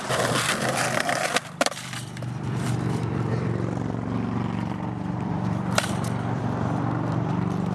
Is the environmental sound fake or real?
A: fake